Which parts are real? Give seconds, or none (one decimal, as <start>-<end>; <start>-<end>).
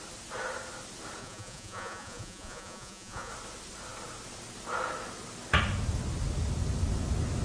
0.0-1.2; 3.3-7.4